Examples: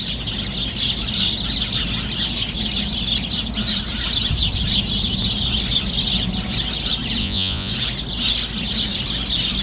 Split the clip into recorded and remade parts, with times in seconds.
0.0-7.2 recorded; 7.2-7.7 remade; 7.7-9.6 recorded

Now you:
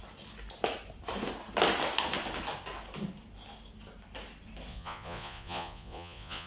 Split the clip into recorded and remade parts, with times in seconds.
0.0-4.7 recorded; 4.7-6.5 remade

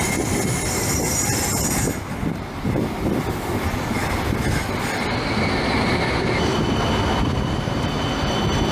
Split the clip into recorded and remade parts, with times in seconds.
0.0-8.7 recorded

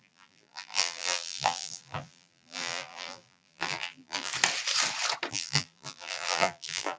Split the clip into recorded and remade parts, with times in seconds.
0.0-4.3 remade; 4.3-5.3 recorded; 5.3-7.0 remade

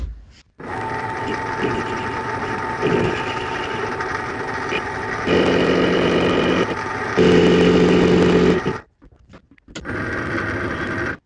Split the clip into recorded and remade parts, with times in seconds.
0.0-7.4 remade; 7.4-8.6 recorded; 8.6-11.3 remade